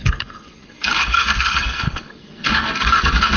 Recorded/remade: remade